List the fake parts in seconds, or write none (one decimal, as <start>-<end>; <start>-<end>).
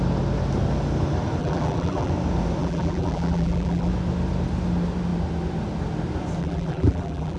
1.4-2.1; 2.6-3.9; 6.4-7.4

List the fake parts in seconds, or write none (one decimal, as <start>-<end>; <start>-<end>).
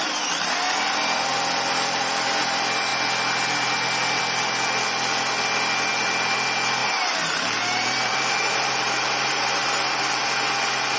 6.8-10.2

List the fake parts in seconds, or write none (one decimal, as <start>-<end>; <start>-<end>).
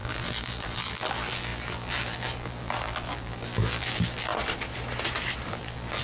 0.0-4.3; 5.5-6.0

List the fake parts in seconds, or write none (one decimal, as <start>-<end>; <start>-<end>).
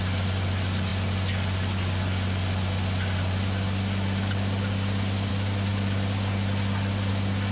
none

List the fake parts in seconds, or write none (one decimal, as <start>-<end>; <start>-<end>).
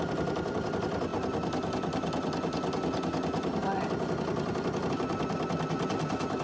none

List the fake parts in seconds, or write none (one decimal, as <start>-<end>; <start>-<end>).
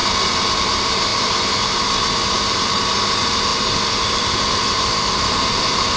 0.6-6.0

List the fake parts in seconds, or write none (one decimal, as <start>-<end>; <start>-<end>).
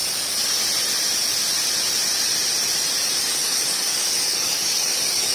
3.2-5.3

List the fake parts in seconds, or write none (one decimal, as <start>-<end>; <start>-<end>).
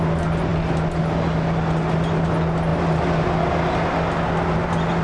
none